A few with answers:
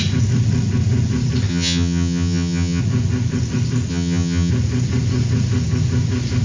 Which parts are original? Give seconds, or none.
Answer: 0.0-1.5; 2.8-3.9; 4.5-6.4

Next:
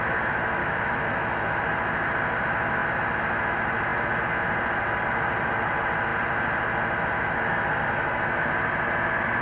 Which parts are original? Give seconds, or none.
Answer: 0.0-0.6; 1.6-9.4

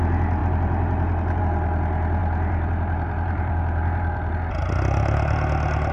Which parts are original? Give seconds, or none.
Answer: 0.0-0.4; 1.4-2.2; 4.3-5.9